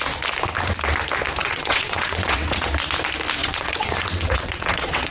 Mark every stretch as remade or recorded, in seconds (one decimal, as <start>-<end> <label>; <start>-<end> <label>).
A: 0.0-1.4 recorded; 1.4-2.7 remade; 2.7-3.4 recorded; 3.4-5.1 remade